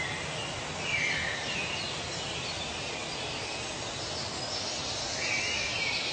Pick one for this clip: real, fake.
real